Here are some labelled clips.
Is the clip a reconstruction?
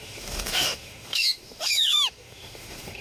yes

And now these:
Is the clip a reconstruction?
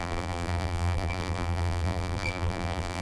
yes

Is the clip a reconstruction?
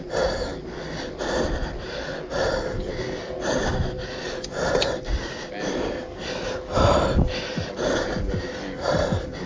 no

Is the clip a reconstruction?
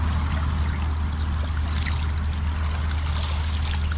no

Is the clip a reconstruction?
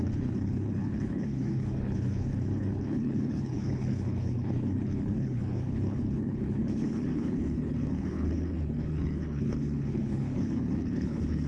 yes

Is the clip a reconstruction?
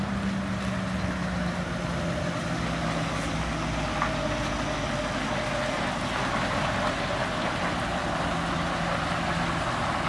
no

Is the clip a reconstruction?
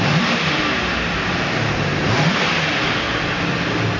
no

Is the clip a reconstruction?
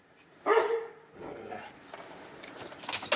no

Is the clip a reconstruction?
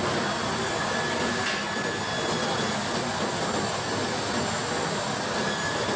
no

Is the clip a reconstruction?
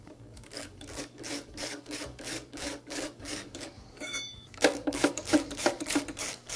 yes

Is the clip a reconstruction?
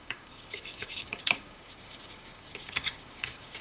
yes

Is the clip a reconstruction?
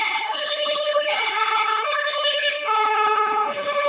yes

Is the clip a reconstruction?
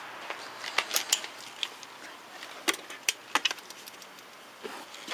no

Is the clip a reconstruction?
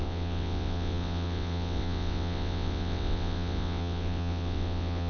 yes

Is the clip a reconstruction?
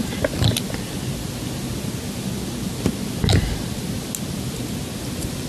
no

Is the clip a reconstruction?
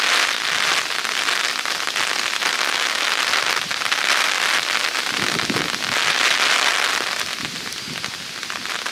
no